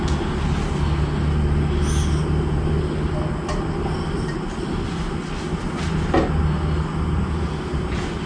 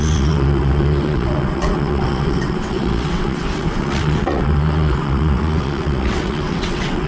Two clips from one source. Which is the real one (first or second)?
first